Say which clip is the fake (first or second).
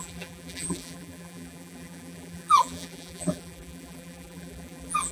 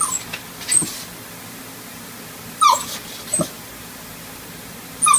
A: first